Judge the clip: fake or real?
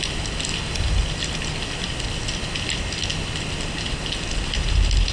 real